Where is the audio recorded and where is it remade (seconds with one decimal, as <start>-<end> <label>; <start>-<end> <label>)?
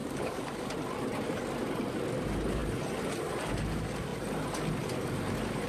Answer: 0.0-0.7 remade; 0.7-5.7 recorded